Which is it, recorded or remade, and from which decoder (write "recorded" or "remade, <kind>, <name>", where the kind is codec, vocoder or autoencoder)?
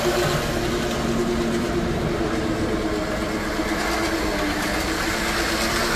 recorded